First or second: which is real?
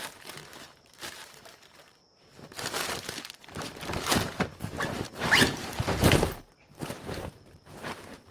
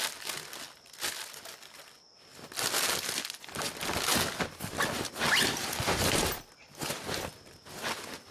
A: second